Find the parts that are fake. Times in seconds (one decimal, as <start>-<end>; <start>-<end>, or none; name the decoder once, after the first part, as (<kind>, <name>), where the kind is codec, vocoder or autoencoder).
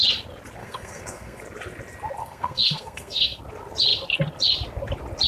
0.6-1.4 (codec, SNAC); 2.2-3.4